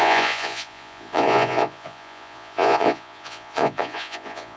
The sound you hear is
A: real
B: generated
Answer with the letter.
B